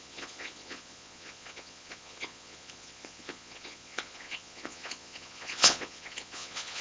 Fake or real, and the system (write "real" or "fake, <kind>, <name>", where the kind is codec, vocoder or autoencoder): fake, vocoder, Vocos